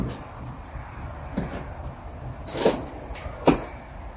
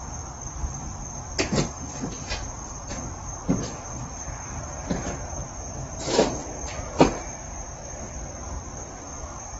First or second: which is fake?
second